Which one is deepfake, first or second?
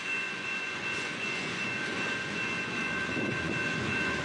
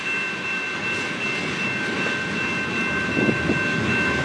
first